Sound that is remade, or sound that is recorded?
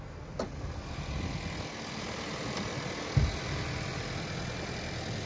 recorded